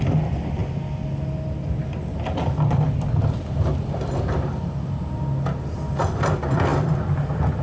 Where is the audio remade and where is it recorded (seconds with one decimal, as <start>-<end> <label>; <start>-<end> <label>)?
0.0-7.6 recorded

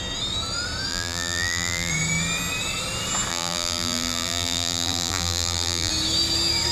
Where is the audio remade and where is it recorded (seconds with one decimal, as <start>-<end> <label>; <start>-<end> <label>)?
0.0-0.9 recorded; 0.9-1.9 remade; 1.9-3.3 recorded; 3.3-5.9 remade; 5.9-6.7 recorded

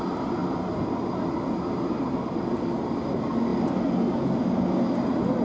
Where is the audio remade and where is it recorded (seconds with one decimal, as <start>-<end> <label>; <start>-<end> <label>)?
0.0-0.4 recorded; 0.4-2.9 remade; 2.9-5.4 recorded

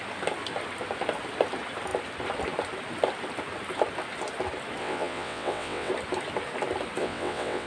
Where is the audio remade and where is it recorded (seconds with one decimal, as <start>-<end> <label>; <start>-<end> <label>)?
0.0-4.8 recorded; 4.8-5.9 remade; 5.9-7.0 recorded; 7.0-7.7 remade

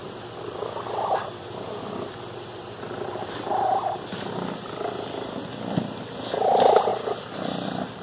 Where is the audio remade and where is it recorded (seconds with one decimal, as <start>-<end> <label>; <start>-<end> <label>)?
0.0-8.0 recorded